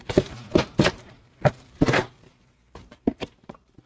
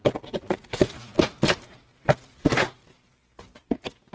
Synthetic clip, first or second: first